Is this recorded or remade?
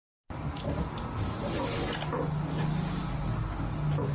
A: recorded